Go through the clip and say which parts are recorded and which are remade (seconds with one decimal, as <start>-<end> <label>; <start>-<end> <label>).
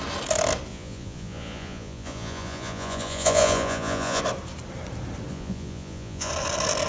0.0-0.7 recorded; 0.7-4.2 remade; 4.2-5.3 recorded; 5.3-6.3 remade; 6.3-6.9 recorded